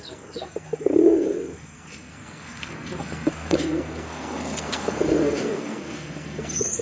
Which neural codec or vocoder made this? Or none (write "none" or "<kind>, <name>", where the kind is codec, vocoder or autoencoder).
codec, SNAC